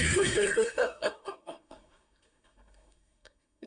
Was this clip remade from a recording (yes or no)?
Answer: yes